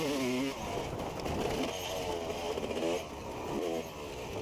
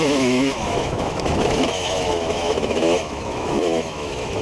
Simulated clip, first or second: second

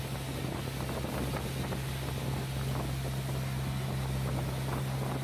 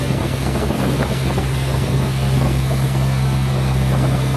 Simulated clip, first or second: second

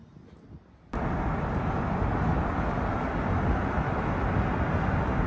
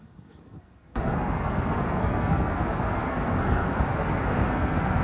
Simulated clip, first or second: second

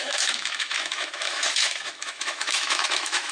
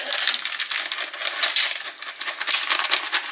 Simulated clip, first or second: first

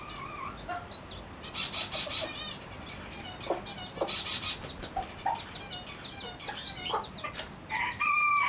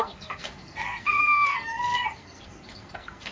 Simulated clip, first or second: second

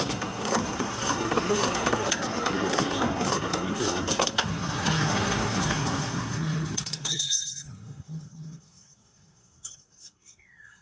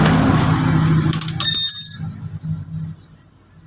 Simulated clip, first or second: first